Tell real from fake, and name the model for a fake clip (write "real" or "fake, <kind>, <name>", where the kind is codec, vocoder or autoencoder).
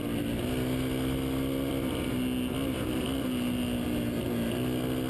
real